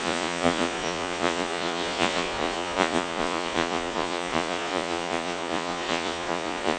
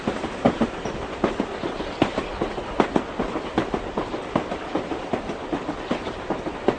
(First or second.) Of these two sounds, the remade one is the first